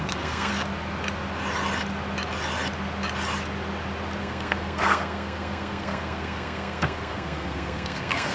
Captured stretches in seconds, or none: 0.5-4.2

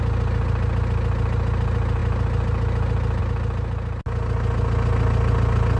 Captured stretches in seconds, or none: 0.0-5.8

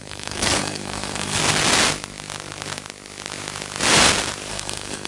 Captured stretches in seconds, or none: 1.4-4.5

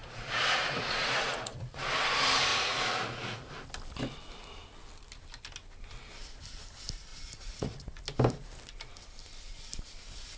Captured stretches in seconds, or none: 1.7-2.5; 3.5-7.1; 8.0-10.4

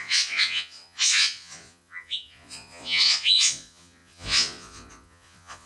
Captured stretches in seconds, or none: none

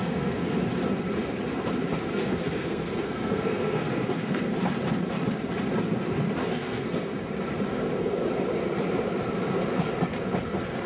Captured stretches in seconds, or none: 0.6-2.1; 4.5-6.4; 7.1-10.9